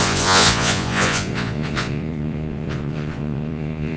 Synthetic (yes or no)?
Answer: yes